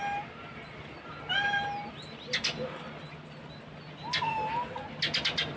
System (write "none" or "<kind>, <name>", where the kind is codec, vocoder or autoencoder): none